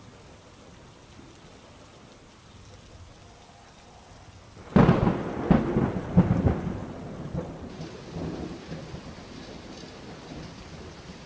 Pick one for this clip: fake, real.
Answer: real